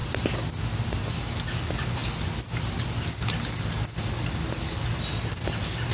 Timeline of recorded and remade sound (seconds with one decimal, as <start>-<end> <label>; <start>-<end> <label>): 0.0-2.0 remade; 2.0-4.8 recorded; 4.8-5.9 remade